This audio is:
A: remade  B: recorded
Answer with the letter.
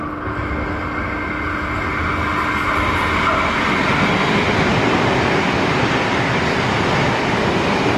B